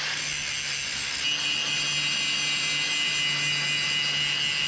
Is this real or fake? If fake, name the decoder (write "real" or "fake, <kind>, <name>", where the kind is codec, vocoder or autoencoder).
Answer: real